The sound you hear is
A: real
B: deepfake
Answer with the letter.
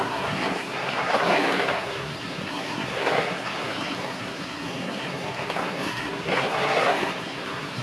B